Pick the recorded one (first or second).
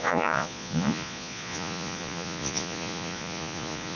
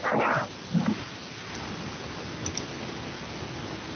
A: second